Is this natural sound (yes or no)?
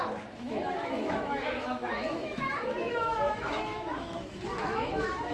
no